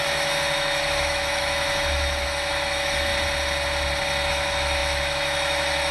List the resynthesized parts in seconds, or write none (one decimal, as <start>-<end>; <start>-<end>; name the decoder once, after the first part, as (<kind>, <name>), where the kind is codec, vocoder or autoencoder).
0.0-3.1 (autoencoder, DAC-VAE); 4.3-5.9